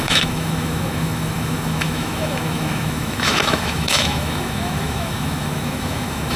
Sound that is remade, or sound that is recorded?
remade